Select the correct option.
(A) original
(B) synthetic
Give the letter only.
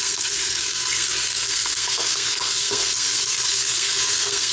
B